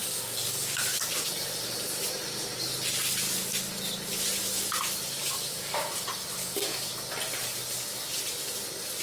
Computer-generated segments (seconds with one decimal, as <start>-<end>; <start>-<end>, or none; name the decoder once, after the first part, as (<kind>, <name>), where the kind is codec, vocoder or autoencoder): 0.0-1.1 (codec, DAC); 5.2-5.9; 6.4-6.9